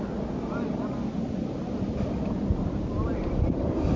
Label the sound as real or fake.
real